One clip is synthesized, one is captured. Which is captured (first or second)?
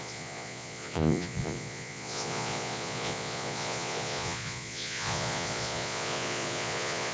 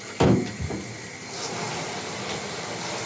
second